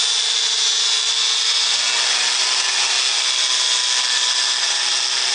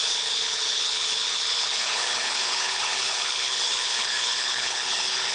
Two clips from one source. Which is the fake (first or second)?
second